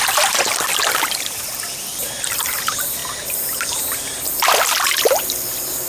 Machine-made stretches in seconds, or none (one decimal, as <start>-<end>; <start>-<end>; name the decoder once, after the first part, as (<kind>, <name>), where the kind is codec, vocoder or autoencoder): 0.0-3.0 (vocoder, BigVGAN v2)